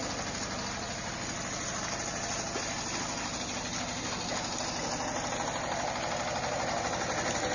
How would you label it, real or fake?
real